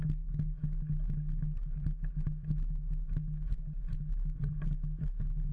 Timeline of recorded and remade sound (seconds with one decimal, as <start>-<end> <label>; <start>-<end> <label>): 0.0-5.5 recorded